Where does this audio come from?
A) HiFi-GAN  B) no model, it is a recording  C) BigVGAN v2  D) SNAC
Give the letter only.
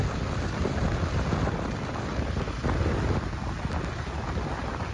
B